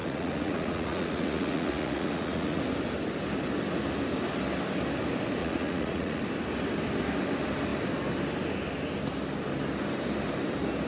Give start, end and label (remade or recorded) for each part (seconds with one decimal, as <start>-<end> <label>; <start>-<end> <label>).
0.0-2.6 remade; 2.6-5.4 recorded; 5.4-6.2 remade; 6.2-10.9 recorded